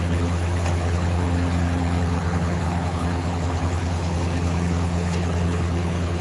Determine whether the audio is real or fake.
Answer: fake